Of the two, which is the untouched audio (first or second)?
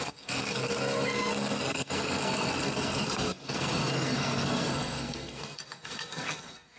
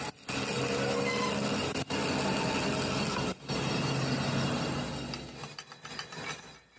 second